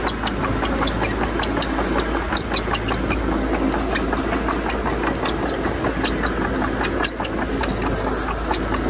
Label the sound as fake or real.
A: real